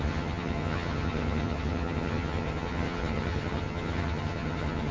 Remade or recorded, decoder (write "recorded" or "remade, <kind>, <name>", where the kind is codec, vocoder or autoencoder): remade, vocoder, HiFi-GAN